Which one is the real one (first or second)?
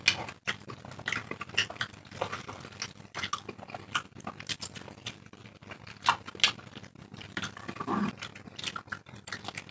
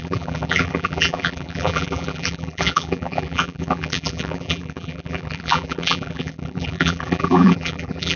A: first